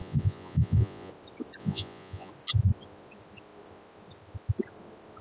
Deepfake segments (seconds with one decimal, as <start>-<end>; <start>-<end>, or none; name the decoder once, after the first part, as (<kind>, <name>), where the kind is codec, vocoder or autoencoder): 0.0-1.1 (vocoder, Vocos); 1.6-2.3